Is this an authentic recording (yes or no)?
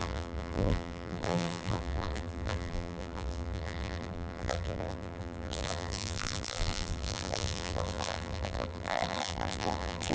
no